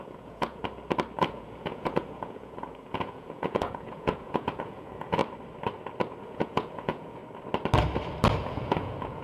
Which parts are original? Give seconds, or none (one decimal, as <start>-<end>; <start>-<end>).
0.6-1.2; 5.2-6.2; 7.2-8.4